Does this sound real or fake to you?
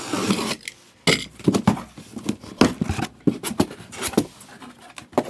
real